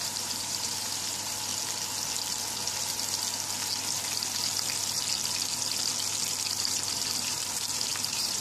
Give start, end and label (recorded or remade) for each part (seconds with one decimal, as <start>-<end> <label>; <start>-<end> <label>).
0.0-1.5 remade; 1.5-6.5 recorded; 6.5-8.4 remade